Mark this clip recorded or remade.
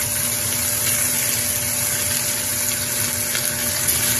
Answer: recorded